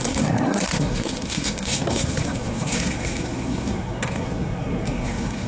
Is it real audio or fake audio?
fake